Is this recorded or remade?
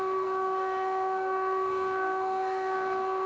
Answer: remade